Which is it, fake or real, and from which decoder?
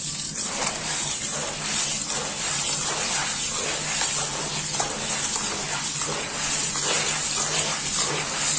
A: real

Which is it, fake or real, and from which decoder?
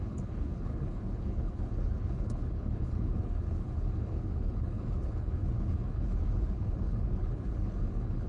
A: fake, codec, HILCodec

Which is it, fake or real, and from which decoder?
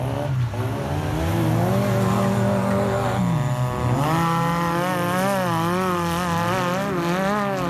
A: real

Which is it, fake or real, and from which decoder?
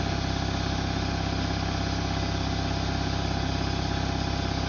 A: real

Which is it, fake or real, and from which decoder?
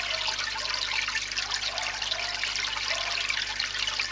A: real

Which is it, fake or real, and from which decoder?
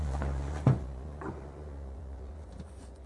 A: fake, vocoder, Vocos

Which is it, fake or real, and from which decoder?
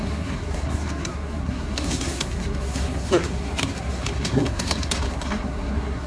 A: fake, codec, SNAC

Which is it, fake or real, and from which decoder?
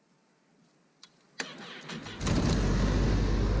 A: real